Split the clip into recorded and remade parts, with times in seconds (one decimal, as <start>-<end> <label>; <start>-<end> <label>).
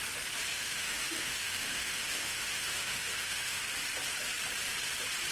0.0-0.5 recorded; 0.5-3.7 remade; 3.7-5.3 recorded